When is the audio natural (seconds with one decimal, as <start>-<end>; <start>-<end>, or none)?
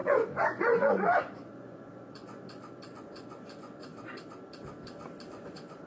3.9-5.3